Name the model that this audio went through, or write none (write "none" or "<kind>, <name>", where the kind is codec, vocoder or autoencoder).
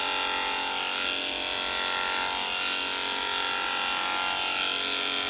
none